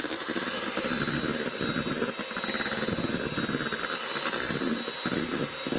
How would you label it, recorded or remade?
recorded